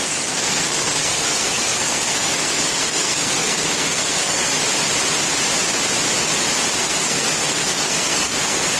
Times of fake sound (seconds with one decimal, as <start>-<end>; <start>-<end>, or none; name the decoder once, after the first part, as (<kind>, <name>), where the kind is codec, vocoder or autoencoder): 0.0-4.5 (codec, SNAC); 6.8-8.8